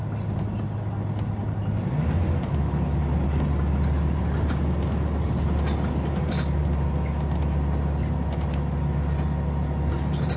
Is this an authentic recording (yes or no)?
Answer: yes